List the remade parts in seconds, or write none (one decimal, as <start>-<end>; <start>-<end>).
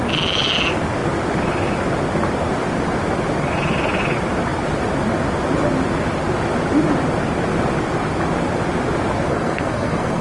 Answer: 9.3-10.2